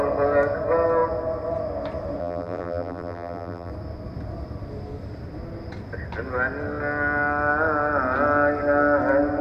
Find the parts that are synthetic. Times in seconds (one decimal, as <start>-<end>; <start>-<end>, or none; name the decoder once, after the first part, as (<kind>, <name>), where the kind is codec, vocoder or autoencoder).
2.2-3.7 (vocoder, BigVGAN v2)